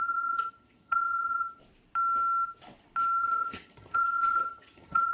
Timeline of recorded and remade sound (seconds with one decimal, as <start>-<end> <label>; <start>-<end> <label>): 0.0-1.6 remade; 1.6-3.2 recorded; 3.2-5.1 remade